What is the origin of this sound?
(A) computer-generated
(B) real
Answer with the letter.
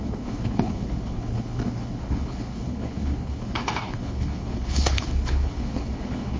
A